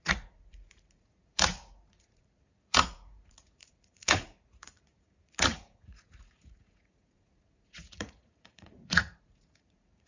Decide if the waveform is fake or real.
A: fake